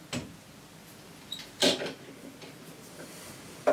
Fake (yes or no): no